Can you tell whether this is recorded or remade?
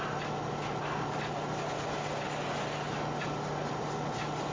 recorded